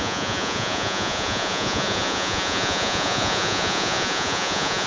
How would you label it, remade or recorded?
remade